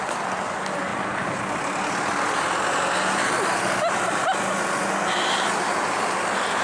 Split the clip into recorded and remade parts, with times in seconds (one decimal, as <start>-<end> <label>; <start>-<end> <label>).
0.0-6.6 recorded